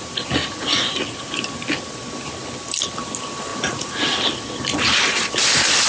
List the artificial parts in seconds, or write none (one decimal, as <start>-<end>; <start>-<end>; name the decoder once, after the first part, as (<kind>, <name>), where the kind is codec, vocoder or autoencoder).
0.4-1.3 (vocoder, Vocos); 3.5-4.0